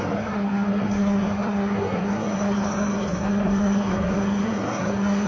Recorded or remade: remade